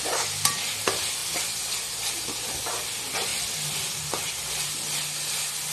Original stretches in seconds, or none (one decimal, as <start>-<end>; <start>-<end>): 0.0-5.7